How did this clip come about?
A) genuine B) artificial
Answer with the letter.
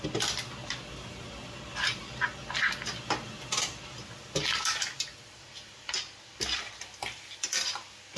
A